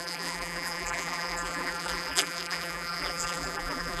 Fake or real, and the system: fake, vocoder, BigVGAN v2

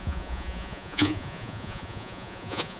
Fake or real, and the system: fake, vocoder, Vocos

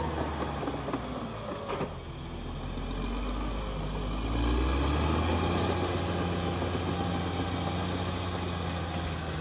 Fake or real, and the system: real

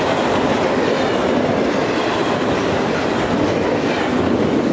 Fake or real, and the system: real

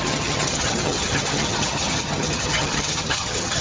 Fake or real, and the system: fake, vocoder, HiFi-GAN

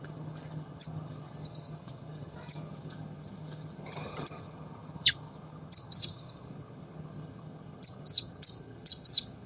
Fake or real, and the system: fake, vocoder, HiFi-GAN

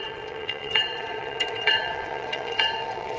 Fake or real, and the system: fake, vocoder, WaveNeXt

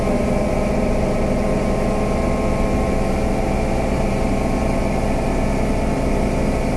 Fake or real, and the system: real